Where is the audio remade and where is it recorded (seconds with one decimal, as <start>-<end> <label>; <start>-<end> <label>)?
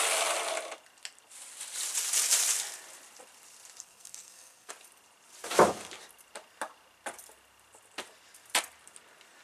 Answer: 0.0-3.8 recorded; 3.8-4.7 remade; 4.7-9.4 recorded